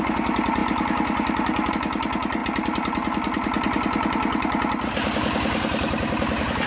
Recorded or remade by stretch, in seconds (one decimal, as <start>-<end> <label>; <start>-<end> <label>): 0.0-6.7 recorded